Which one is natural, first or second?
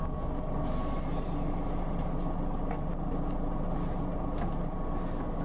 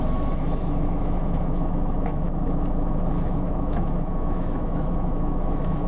first